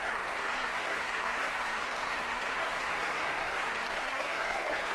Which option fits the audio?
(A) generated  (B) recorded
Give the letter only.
A